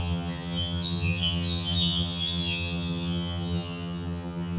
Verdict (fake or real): fake